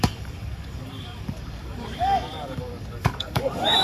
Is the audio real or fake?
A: fake